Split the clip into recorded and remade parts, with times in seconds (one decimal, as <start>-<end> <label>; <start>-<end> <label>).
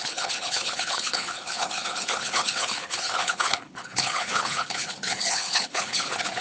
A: 0.0-6.4 remade